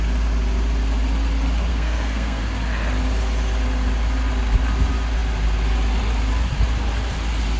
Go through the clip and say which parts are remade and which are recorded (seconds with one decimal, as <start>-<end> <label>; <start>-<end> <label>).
0.0-1.7 recorded; 1.7-2.4 remade; 2.4-7.6 recorded